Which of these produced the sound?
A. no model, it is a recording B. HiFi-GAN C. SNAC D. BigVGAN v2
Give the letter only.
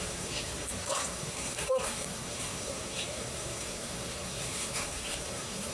C